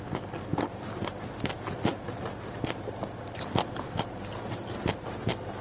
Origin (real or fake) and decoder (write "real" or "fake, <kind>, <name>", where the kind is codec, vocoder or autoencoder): real